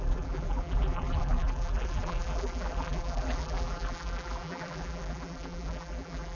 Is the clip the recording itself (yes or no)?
no